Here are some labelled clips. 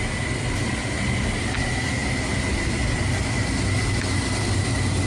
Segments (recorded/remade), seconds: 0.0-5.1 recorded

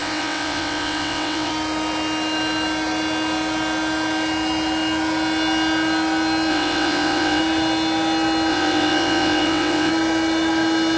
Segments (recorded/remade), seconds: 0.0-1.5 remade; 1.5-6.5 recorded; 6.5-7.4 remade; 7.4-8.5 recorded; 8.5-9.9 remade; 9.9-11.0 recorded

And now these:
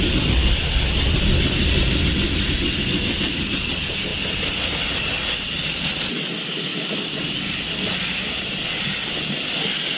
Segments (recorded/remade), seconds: 0.0-10.0 recorded